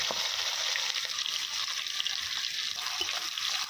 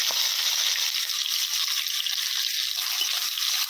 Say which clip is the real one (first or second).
second